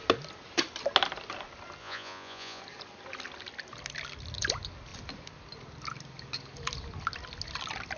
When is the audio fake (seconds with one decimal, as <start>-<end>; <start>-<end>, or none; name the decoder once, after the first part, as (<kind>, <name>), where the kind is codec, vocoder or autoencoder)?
1.8-2.6 (vocoder, Vocos)